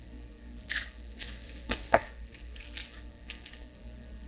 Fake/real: fake